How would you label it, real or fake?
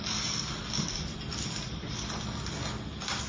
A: real